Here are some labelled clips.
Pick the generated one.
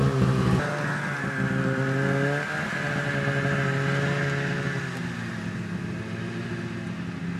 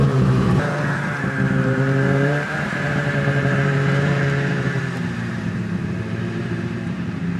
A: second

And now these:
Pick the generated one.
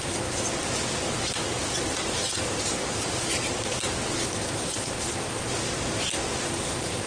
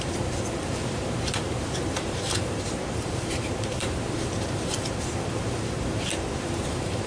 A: second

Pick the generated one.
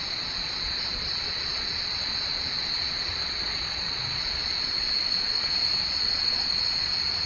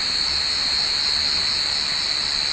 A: first